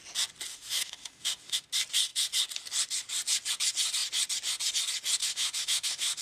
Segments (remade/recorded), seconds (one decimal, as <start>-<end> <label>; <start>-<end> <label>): 0.0-0.5 recorded; 0.5-1.7 remade; 1.7-5.2 recorded; 5.2-6.2 remade